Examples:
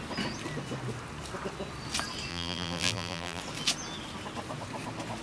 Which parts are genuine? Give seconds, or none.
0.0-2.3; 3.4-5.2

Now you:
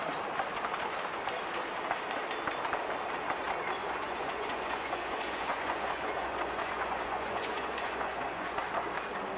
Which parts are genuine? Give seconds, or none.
0.0-3.8; 8.6-9.4

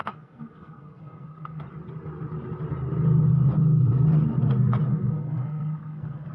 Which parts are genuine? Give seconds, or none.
1.6-4.9

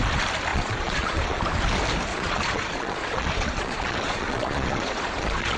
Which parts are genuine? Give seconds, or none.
0.0-0.5; 1.4-2.1

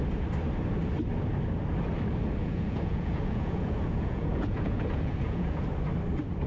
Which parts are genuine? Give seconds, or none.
0.0-2.4; 5.7-6.5